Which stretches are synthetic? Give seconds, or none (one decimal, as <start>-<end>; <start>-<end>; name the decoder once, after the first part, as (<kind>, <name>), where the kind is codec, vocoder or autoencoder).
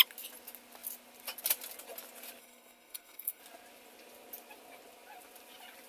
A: 2.4-3.4 (codec, SNAC)